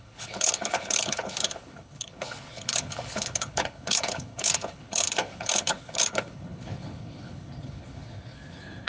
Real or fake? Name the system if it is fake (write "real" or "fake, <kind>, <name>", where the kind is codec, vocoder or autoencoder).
fake, codec, HILCodec